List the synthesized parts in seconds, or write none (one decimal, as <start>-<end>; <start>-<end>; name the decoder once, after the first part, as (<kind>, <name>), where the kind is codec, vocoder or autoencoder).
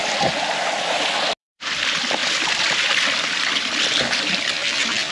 1.4-5.1 (vocoder, BigVGAN v2)